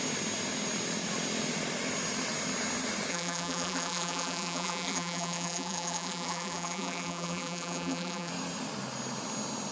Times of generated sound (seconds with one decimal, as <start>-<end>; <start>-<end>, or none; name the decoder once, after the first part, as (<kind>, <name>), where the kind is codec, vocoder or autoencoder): 3.1-8.3 (vocoder, BigVGAN v2)